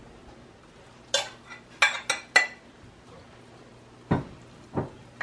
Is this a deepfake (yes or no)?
no